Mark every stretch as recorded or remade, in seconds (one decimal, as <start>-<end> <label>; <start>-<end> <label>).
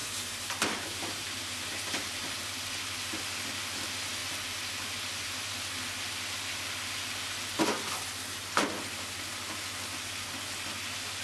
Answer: 0.0-2.4 remade; 2.4-11.2 recorded